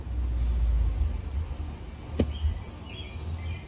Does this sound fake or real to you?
real